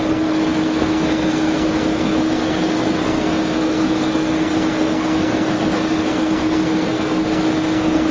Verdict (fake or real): fake